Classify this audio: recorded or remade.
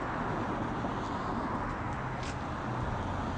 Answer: recorded